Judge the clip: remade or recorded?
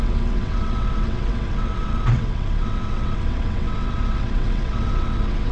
remade